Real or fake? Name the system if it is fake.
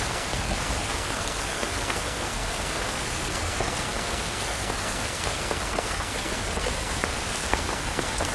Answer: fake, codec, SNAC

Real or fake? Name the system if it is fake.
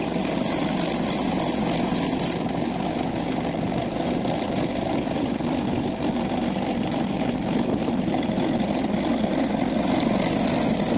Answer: real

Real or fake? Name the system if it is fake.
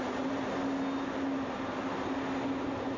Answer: real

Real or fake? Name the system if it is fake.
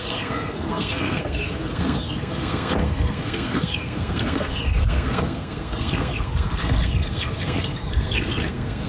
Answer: fake, codec, SNAC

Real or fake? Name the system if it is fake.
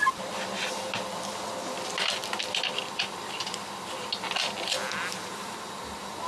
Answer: real